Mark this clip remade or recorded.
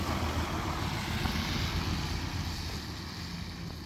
recorded